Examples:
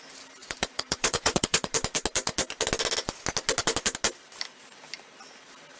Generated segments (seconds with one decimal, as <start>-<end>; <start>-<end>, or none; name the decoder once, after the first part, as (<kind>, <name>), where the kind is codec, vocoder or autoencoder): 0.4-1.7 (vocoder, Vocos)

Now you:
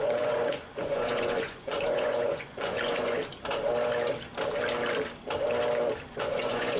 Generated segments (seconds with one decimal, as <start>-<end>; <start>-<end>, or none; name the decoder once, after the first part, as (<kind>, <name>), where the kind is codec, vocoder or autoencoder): 0.0-3.2 (vocoder, Vocos); 6.2-6.8

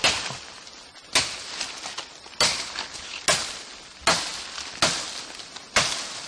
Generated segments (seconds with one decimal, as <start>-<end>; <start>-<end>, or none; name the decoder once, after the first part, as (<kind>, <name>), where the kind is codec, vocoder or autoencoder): none